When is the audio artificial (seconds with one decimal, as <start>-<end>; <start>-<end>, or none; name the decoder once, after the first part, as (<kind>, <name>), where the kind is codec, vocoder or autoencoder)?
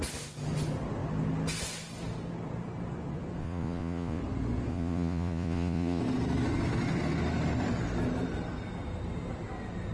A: 3.4-4.2 (vocoder, Vocos); 4.7-6.0